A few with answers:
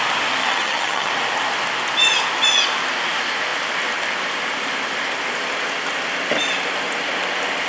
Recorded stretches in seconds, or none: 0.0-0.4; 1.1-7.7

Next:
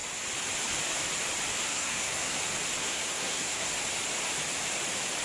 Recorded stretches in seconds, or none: 0.0-1.7; 2.4-2.8; 3.7-5.2

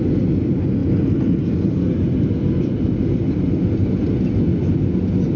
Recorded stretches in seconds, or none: 0.0-0.8; 4.0-5.4

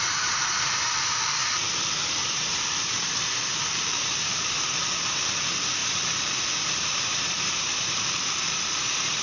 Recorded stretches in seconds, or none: none

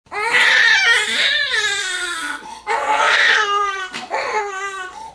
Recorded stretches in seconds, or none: 0.0-1.8

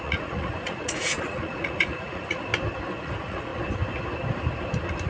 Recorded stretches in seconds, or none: 2.5-3.0; 3.5-5.1

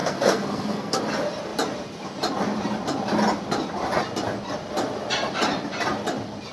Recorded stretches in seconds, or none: 1.0-6.5

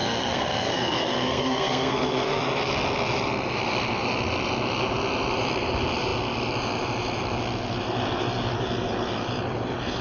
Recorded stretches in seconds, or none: 2.4-10.0